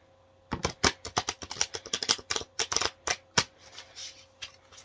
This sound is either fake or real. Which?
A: real